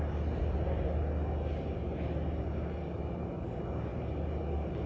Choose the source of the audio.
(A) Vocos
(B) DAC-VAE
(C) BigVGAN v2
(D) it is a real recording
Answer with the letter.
D